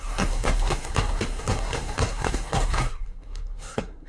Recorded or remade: remade